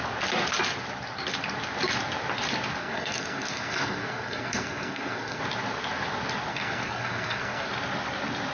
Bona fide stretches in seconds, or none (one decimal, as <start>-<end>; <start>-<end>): 0.0-2.8; 5.4-6.5; 7.7-8.5